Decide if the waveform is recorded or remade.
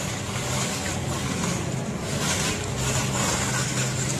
remade